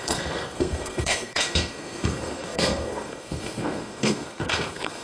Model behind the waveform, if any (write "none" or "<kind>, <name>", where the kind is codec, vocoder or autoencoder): codec, SNAC